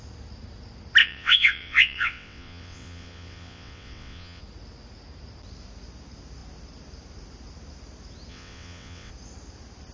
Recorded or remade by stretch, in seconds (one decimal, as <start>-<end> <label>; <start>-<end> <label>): 0.0-1.0 recorded; 1.0-4.4 remade; 4.4-8.3 recorded; 8.3-9.1 remade; 9.1-9.9 recorded